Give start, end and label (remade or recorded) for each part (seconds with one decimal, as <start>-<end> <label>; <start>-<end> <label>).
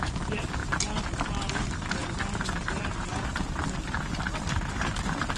0.0-5.4 recorded